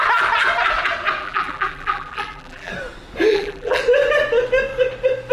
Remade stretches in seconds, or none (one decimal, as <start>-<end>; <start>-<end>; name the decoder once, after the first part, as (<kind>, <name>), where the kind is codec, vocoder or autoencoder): 1.2-2.7 (vocoder, BigVGAN v2); 3.3-3.8